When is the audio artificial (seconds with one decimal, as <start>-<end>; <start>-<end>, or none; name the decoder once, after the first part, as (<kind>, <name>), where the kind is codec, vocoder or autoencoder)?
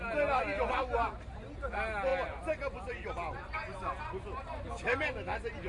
none